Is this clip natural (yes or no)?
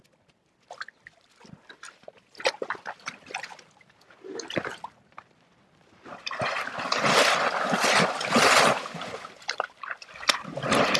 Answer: no